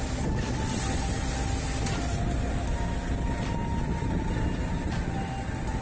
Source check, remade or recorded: recorded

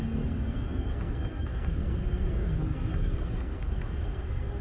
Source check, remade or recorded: remade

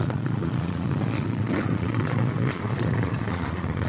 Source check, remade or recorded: remade